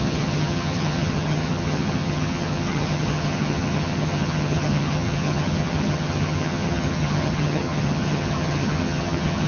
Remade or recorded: remade